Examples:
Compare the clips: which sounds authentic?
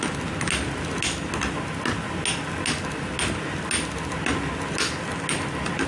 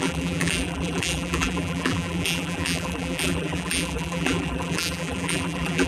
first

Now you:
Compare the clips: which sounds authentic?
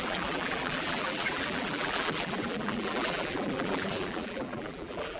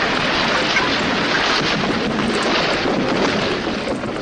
second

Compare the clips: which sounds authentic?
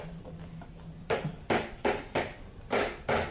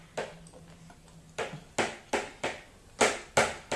second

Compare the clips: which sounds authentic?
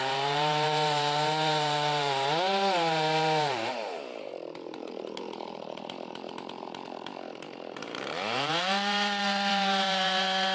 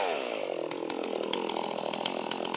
second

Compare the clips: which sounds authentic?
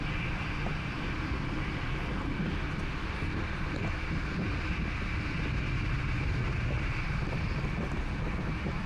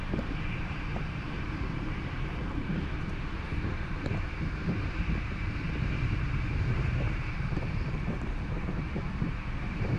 first